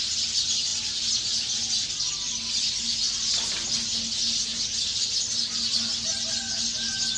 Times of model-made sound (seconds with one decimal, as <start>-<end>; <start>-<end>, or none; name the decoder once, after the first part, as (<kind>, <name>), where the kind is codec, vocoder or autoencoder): none